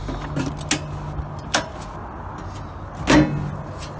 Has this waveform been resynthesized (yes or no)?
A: no